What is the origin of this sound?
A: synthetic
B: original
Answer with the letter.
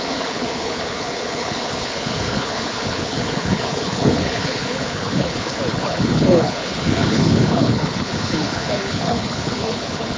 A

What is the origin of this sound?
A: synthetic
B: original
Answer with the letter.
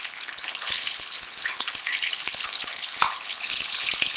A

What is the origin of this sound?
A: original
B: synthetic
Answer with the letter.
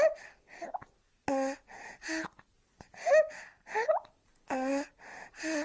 A